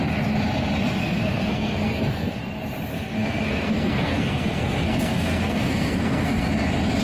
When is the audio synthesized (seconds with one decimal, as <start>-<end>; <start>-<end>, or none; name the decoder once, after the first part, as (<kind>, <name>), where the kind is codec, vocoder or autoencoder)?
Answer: 1.0-2.4 (codec, SNAC); 2.9-6.5